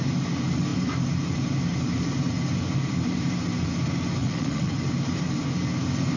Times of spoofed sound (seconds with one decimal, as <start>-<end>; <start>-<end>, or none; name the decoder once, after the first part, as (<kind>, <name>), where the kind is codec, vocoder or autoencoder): 4.2-4.7 (vocoder, Vocos)